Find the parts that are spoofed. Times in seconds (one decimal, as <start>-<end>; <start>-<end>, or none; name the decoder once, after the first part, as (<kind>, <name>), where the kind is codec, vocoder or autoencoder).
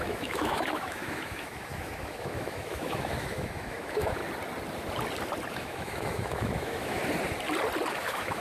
0.0-4.2 (autoencoder, DAC-VAE); 5.5-7.0; 7.9-8.4